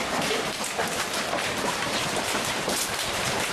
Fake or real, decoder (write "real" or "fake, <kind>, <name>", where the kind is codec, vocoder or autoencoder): fake, vocoder, BigVGAN v2